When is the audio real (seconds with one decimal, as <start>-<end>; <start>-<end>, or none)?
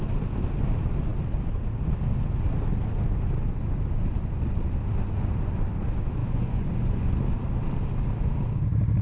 0.0-6.2; 7.1-9.0